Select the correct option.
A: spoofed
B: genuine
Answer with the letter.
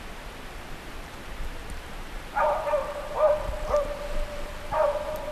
A